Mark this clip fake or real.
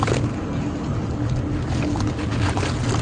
real